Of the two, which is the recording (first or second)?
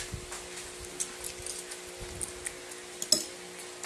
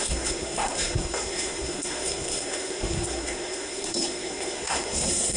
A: first